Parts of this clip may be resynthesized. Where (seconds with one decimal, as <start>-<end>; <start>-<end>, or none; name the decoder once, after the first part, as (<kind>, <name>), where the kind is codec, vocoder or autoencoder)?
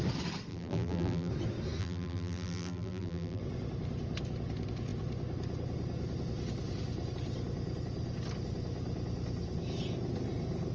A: 0.5-1.3 (vocoder, BigVGAN v2); 1.8-3.4